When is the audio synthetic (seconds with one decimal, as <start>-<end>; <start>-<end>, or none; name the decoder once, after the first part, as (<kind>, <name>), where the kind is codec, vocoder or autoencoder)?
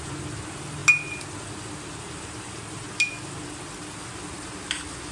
none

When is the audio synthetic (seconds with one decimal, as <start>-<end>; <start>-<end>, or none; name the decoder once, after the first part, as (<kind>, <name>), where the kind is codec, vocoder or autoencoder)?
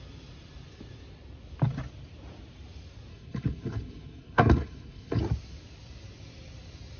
3.1-5.2 (codec, HILCodec)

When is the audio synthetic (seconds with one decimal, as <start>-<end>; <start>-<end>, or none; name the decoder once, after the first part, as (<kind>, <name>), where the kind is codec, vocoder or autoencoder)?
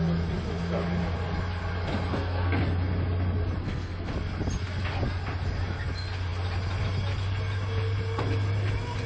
2.1-2.6 (codec, SNAC); 3.6-4.1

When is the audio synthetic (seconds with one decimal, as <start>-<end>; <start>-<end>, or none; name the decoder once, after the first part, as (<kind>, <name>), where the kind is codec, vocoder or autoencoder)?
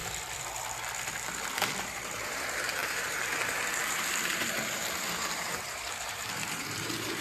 1.8-7.2 (vocoder, BigVGAN v2)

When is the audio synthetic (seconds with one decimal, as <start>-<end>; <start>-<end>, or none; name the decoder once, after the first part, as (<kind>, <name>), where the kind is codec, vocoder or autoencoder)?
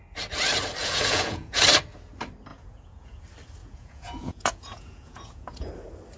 0.8-1.6 (vocoder, Vocos); 2.5-3.2; 3.6-5.7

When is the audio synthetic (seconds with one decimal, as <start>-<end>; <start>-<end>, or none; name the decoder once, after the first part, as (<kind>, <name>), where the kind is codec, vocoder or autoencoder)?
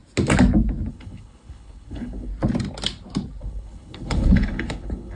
0.9-2.3 (codec, HILCodec); 3.4-5.2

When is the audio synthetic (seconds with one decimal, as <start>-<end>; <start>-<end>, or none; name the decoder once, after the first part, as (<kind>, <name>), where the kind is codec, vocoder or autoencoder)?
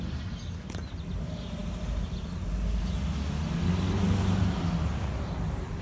none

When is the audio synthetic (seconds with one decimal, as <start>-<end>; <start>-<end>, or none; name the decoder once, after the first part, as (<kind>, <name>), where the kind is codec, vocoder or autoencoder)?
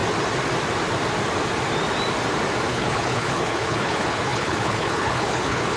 2.7-5.8 (codec, HILCodec)